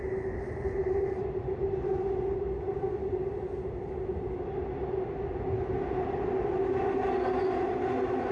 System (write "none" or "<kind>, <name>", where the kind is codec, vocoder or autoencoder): none